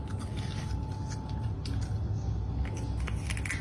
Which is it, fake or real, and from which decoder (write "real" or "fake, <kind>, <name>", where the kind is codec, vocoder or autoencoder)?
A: real